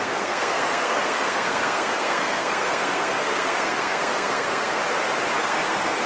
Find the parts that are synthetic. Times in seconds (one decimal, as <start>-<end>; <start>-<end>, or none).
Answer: 0.0-4.8; 5.4-6.1